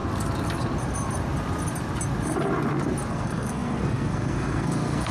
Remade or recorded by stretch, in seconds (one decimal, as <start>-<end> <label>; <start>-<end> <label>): 0.0-3.1 recorded; 3.1-5.1 remade